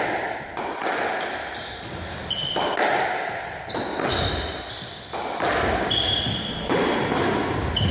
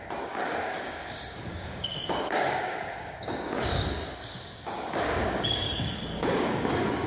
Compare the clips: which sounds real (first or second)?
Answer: first